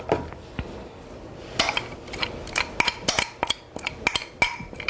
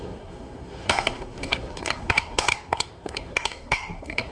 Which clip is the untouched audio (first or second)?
first